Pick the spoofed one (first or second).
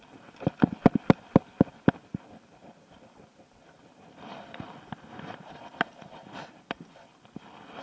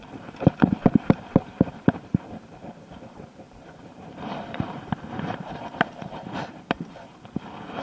second